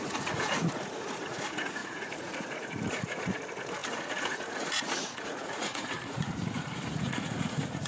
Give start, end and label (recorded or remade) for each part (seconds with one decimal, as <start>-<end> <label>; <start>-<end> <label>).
0.0-7.9 remade